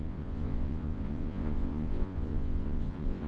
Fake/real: fake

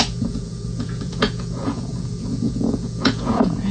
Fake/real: fake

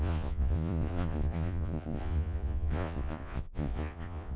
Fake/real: fake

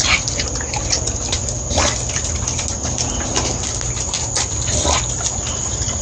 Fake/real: real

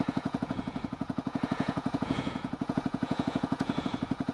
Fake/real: fake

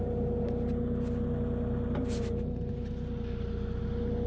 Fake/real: real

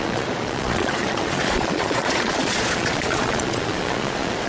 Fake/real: fake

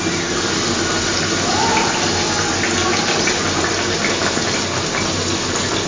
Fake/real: real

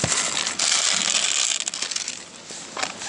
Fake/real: real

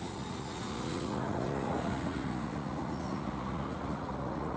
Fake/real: fake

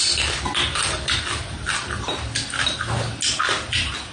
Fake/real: real